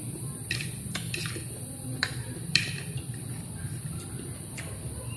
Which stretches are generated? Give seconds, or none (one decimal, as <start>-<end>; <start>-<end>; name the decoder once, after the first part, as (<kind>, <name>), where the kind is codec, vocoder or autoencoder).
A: 1.9-5.2 (vocoder, BigVGAN v2)